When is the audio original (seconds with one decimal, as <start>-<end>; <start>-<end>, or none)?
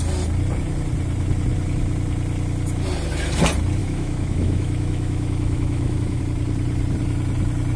0.0-3.8; 6.2-7.8